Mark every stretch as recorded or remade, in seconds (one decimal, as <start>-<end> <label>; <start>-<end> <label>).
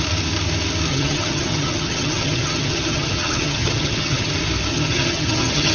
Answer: 0.0-0.9 recorded; 0.9-4.3 remade; 4.3-4.7 recorded; 4.7-5.7 remade